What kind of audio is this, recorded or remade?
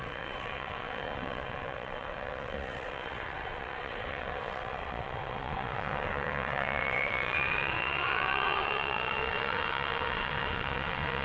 remade